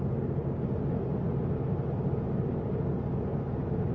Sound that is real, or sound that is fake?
real